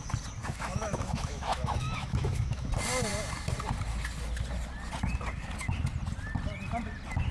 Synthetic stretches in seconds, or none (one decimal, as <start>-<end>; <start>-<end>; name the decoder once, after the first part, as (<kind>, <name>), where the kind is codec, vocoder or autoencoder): 0.4-2.7 (autoencoder, DAC-VAE)

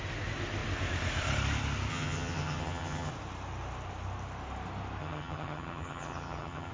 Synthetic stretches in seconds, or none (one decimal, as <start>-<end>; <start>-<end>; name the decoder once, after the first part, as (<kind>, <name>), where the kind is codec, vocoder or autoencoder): 1.9-3.1 (vocoder, HiFi-GAN); 5.0-6.7

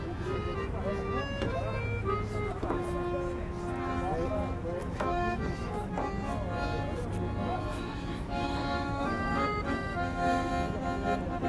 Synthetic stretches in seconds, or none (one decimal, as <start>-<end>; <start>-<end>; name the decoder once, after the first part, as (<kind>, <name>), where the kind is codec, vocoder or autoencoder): 4.8-5.9 (autoencoder, DAC-VAE); 7.7-10.5